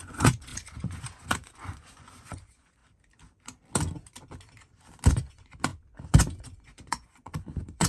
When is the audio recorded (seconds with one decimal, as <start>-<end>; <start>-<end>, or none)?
2.8-5.1